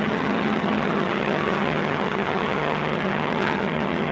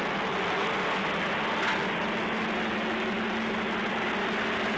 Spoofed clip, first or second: first